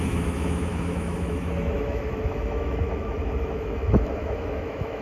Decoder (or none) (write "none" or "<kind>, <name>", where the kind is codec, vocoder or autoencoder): autoencoder, DAC-VAE